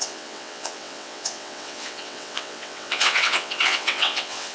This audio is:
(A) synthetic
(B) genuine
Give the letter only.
A